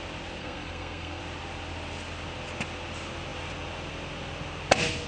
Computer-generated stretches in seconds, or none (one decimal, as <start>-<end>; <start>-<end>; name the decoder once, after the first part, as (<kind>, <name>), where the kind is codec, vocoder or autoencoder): 0.4-1.2 (codec, SNAC)